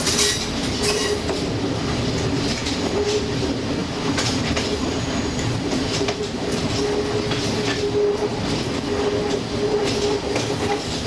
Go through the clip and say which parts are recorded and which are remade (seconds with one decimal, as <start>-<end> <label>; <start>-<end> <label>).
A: 0.0-3.8 recorded; 3.8-6.8 remade; 6.8-11.1 recorded